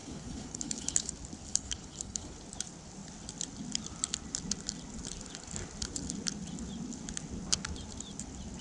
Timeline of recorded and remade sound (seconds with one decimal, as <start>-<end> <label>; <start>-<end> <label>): 0.0-1.1 remade; 1.1-1.5 recorded; 1.5-2.4 remade; 2.4-8.6 recorded